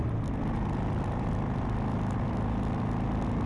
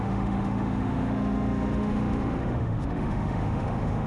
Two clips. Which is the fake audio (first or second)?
second